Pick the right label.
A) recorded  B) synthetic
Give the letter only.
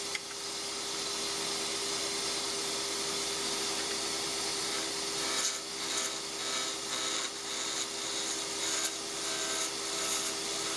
A